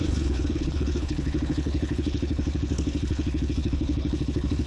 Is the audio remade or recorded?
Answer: remade